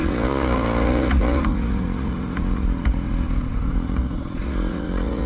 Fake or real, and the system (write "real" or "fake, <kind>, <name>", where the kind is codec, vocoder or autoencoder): fake, vocoder, Vocos